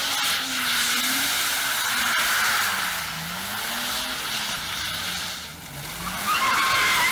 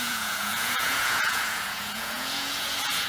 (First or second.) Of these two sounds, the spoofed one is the second